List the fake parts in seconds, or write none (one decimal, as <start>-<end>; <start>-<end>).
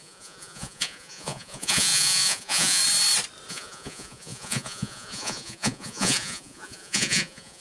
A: 0.0-2.8; 3.5-7.6